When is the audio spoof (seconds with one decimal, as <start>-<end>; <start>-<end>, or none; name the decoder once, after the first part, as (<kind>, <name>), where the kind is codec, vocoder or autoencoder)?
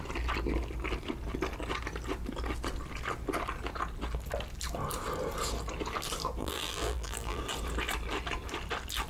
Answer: 6.4-7.4 (vocoder, BigVGAN v2)